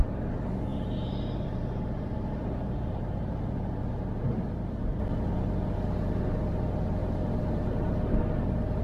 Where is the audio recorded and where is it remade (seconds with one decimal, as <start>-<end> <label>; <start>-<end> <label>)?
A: 0.0-0.7 recorded; 0.7-3.5 remade; 3.5-4.3 recorded; 4.3-5.0 remade; 5.0-7.0 recorded; 7.0-8.2 remade; 8.2-8.8 recorded